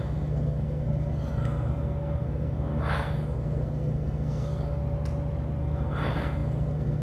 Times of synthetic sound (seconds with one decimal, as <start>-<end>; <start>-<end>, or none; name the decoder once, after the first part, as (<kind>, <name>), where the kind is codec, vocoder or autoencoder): 0.0-4.8 (codec, SNAC); 5.6-7.0